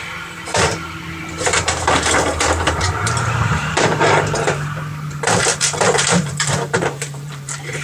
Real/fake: fake